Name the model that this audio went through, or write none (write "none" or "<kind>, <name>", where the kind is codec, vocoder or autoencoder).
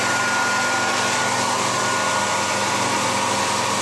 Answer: none